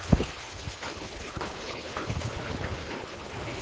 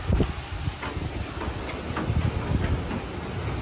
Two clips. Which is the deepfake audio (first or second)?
first